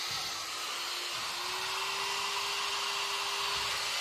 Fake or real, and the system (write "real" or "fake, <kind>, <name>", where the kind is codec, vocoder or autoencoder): real